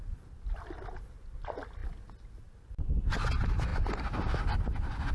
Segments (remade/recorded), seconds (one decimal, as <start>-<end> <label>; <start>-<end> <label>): 0.0-5.1 recorded